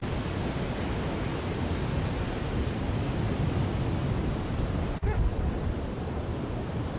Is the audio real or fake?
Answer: real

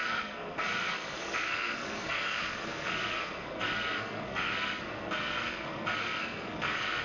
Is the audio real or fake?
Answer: fake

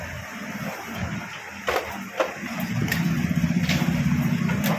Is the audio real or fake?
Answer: fake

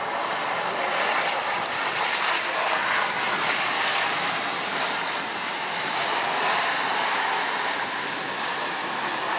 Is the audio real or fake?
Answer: real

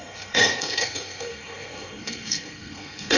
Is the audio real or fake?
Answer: fake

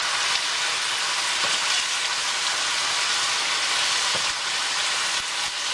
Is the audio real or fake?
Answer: real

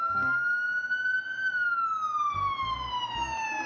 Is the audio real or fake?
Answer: real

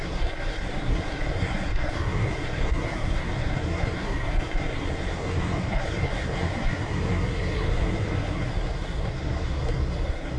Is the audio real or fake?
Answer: fake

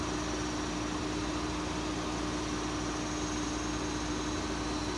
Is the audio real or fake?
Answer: real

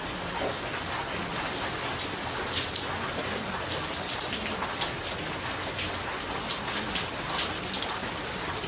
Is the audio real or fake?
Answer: real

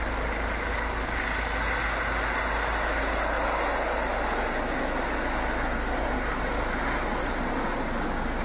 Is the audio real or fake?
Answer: real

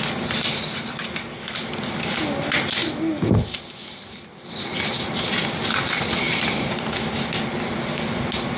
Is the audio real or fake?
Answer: real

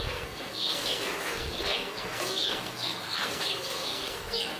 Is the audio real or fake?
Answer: fake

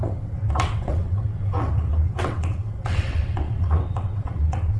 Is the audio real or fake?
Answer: fake